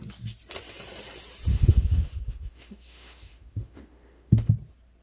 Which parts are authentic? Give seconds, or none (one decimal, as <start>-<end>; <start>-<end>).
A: 0.0-1.5; 4.5-5.0